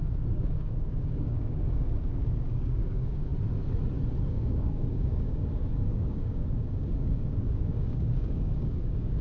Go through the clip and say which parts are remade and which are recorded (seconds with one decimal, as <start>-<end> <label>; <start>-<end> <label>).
0.0-3.3 remade; 3.3-4.3 recorded; 4.3-9.2 remade